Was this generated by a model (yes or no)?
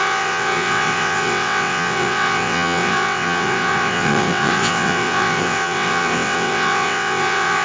yes